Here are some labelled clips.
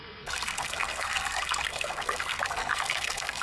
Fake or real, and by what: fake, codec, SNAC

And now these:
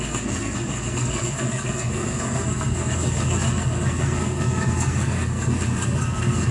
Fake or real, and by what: fake, codec, SNAC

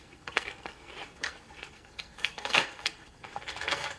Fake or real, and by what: fake, codec, SNAC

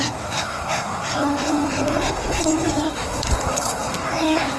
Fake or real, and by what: fake, codec, SNAC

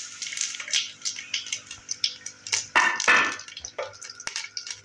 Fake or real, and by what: real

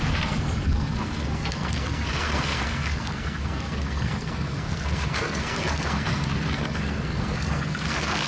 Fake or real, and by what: fake, codec, SNAC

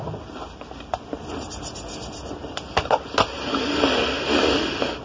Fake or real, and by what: real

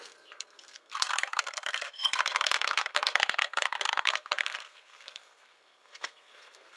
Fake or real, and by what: fake, codec, SNAC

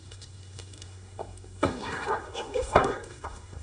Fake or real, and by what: fake, codec, SNAC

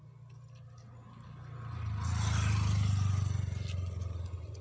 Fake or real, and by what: real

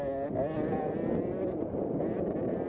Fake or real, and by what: real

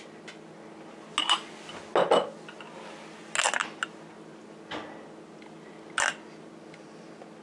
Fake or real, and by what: real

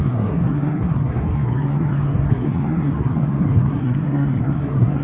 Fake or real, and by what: fake, codec, SNAC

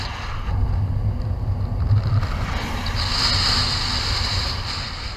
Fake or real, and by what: real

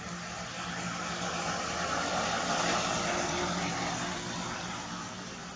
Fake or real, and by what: real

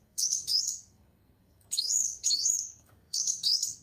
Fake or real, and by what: fake, codec, SNAC